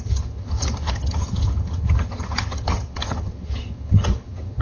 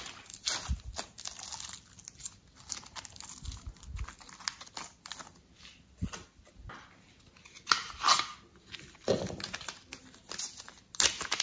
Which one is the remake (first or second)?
first